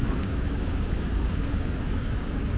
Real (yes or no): no